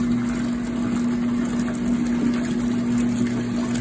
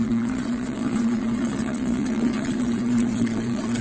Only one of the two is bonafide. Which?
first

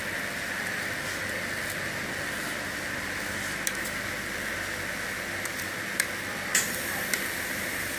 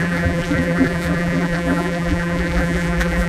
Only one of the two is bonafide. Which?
first